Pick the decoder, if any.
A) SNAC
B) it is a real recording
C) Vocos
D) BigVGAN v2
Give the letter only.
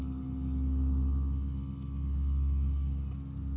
B